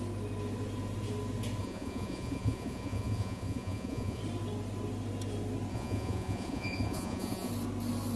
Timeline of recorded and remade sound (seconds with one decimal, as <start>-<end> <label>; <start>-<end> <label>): 0.0-1.6 recorded; 1.6-4.2 remade; 4.2-5.7 recorded; 5.7-7.5 remade; 7.5-8.2 recorded